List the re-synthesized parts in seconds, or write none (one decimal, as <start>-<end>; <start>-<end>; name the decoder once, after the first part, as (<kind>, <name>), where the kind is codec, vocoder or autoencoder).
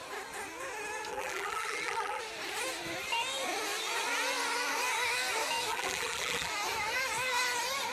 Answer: 1.1-2.2 (vocoder, BigVGAN v2); 5.7-6.5